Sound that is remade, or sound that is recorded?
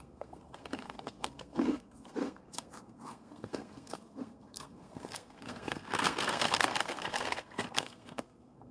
remade